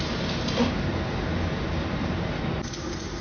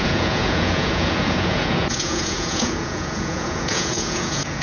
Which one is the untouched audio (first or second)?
first